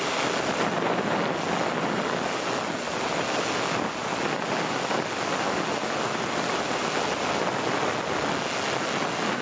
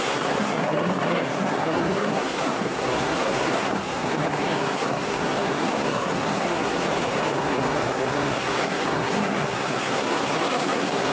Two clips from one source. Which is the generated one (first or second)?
second